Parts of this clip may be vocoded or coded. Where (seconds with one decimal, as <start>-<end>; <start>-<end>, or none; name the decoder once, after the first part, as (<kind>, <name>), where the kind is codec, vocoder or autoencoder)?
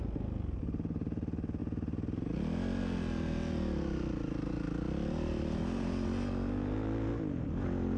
none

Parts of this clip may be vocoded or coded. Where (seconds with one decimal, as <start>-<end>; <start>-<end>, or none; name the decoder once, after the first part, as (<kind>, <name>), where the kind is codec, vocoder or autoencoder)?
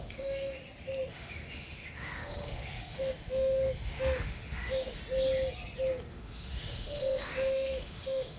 0.0-0.6 (autoencoder, DAC-VAE); 1.1-5.0; 6.1-8.4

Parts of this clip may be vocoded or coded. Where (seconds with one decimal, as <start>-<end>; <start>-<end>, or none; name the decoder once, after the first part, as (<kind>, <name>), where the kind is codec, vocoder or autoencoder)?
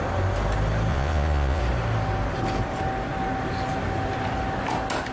0.9-1.6 (vocoder, Vocos)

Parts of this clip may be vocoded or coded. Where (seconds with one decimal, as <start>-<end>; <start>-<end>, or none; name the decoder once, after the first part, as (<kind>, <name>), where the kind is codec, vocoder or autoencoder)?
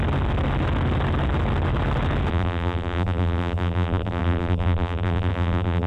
2.3-5.9 (vocoder, BigVGAN v2)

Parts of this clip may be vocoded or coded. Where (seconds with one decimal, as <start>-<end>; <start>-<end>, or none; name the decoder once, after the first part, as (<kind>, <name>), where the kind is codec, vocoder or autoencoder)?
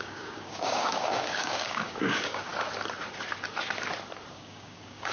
0.0-2.5 (codec, DAC); 4.3-5.1